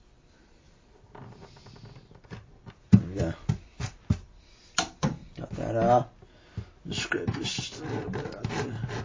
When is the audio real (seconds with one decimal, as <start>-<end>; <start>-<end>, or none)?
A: 5.2-6.8